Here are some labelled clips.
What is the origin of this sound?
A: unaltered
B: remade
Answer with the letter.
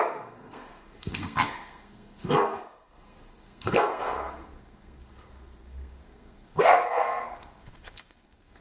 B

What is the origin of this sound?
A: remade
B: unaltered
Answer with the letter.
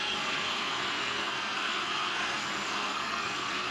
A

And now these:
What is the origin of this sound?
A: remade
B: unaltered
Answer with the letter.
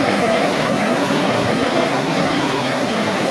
A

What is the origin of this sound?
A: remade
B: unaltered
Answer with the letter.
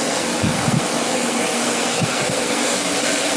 A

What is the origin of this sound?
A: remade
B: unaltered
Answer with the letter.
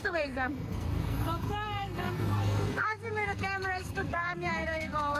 A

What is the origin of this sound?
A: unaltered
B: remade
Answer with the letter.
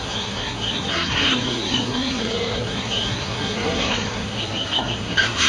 B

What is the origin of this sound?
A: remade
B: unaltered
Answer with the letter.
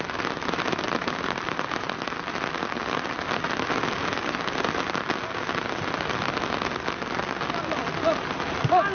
B